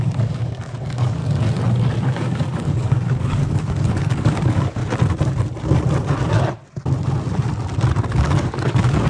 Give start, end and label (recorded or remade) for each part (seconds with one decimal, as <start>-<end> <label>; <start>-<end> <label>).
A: 0.0-1.2 remade; 1.2-2.0 recorded; 2.0-4.8 remade; 4.8-8.1 recorded; 8.1-9.1 remade